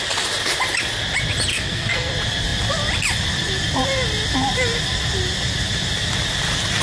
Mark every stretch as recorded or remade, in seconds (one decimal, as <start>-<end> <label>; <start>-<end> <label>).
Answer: 0.0-1.5 recorded; 1.5-2.1 remade; 2.1-6.8 recorded